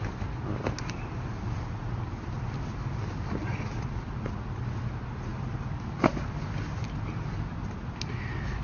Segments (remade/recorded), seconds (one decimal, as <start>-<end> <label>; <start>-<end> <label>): 0.0-8.6 recorded